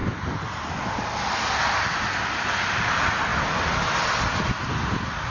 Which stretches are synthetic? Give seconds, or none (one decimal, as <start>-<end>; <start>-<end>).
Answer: none